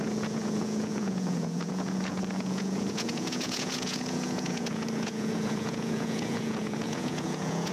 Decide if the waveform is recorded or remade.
remade